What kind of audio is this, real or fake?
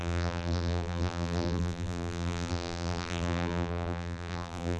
fake